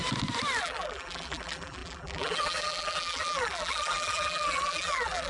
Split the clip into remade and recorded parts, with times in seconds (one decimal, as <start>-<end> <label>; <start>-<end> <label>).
0.0-0.6 recorded; 0.6-5.3 remade